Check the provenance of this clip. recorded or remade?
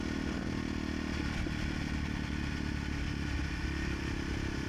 recorded